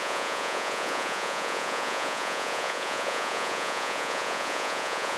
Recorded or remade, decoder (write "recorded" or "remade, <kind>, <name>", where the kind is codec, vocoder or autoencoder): remade, vocoder, Vocos